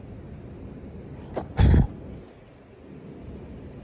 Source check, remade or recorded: recorded